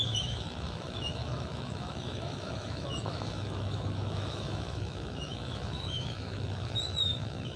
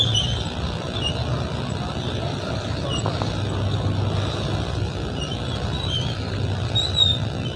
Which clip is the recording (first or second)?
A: second